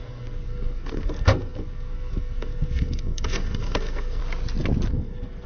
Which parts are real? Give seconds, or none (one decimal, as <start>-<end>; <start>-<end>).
4.2-4.9